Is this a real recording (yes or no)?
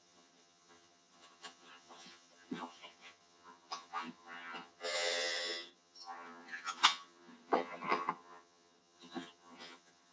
no